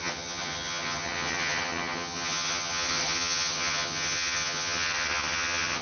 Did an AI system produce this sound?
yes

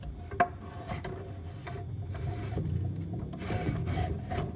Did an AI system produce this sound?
no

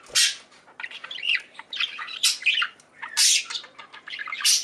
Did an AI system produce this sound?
no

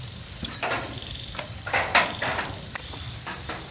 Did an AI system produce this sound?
yes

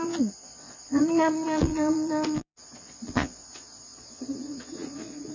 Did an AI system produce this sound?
yes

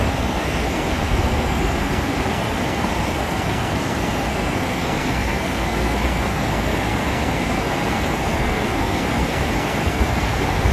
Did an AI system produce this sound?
yes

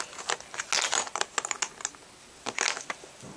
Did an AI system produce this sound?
no